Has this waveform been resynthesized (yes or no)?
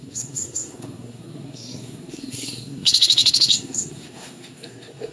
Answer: yes